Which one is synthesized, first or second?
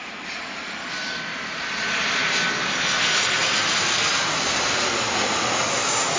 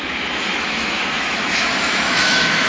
second